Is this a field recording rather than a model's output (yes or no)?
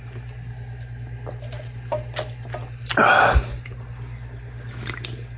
yes